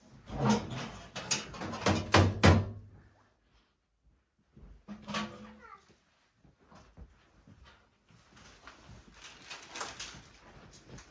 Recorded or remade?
recorded